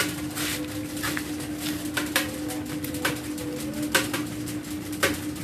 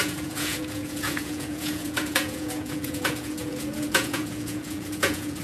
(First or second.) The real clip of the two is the first